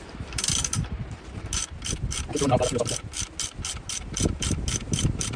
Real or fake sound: real